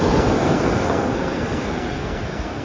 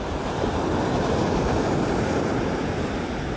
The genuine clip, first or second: second